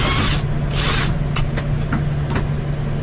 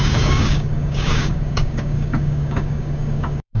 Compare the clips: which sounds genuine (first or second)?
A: first